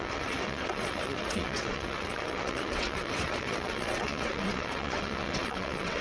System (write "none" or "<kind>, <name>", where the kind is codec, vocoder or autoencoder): vocoder, WaveNeXt